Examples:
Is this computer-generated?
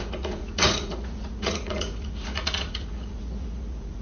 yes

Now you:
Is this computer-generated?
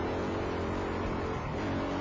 no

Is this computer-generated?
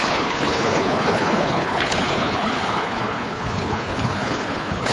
yes